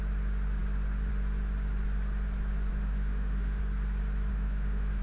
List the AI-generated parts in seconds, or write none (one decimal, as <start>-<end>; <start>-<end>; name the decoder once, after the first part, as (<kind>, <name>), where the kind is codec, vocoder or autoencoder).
2.7-3.6 (autoencoder, DAC-VAE); 4.3-5.0